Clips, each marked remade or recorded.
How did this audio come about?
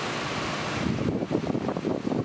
recorded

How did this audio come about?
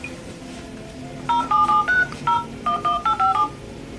remade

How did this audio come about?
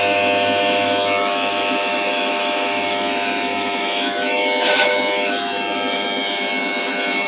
remade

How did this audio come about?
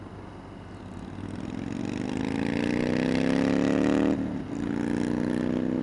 recorded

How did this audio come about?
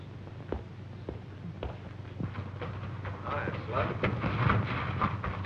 recorded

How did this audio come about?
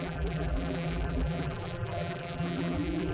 remade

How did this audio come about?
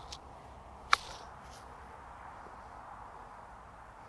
recorded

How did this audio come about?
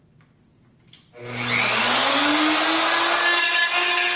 recorded